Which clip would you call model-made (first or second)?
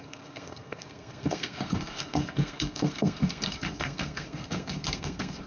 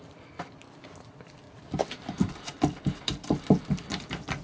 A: first